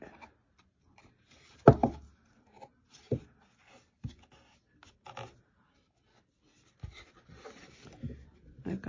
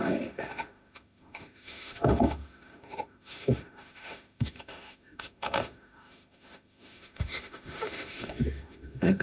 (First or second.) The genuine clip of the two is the first